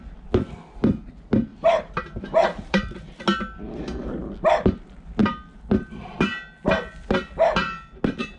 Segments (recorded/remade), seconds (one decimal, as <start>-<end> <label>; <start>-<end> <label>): 0.0-1.5 recorded; 1.5-3.1 remade; 3.1-8.4 recorded